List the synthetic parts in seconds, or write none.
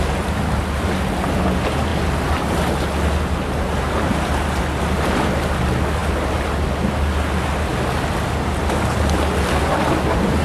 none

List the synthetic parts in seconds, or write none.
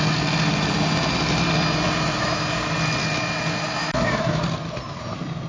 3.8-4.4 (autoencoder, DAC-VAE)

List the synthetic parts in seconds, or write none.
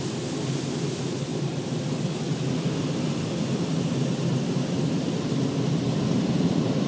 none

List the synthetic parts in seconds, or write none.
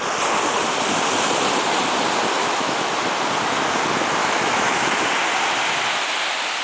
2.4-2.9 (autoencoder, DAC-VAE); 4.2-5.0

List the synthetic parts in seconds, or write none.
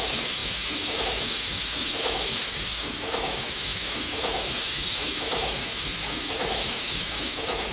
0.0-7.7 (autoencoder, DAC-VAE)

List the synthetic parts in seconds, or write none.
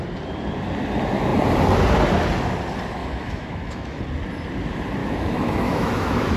3.0-4.0 (autoencoder, DAC-VAE); 5.0-6.4